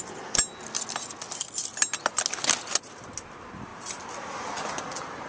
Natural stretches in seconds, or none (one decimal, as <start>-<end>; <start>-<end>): 0.0-3.7